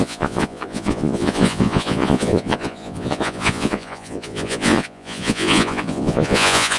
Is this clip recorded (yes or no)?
no